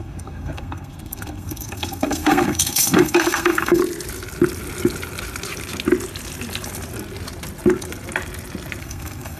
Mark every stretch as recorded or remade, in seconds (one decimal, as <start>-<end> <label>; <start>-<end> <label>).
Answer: 0.0-3.8 remade; 3.8-8.8 recorded; 8.8-9.4 remade